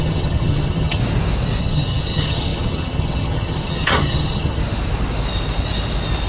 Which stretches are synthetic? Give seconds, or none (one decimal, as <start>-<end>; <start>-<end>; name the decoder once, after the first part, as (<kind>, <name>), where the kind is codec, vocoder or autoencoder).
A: 0.0-1.0 (vocoder, HiFi-GAN); 1.6-4.6